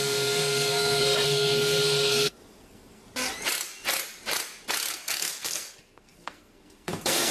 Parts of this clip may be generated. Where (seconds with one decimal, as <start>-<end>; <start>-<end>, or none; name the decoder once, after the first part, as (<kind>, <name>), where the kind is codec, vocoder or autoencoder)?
0.0-3.0 (codec, SNAC); 4.9-7.3